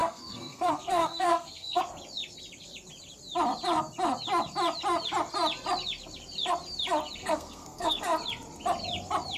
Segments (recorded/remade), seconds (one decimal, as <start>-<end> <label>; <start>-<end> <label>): 0.0-1.8 remade; 1.8-7.2 recorded; 7.2-8.0 remade; 8.0-9.4 recorded